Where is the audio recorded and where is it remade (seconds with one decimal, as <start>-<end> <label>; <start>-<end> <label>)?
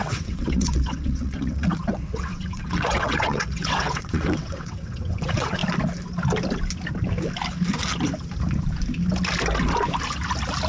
0.0-5.6 remade; 5.6-10.7 recorded